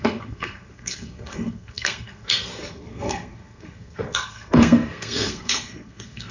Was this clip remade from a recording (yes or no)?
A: yes